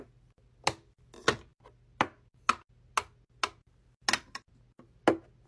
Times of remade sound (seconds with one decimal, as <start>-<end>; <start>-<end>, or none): none